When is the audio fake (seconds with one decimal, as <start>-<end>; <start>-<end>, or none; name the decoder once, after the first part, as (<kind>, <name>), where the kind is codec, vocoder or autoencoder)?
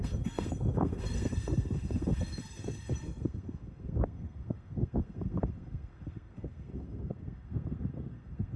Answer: 0.0-8.6 (codec, SNAC)